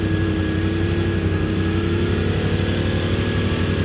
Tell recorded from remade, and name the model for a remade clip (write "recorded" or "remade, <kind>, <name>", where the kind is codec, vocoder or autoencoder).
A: recorded